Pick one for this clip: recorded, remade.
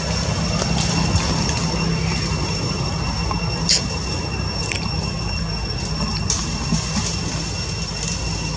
recorded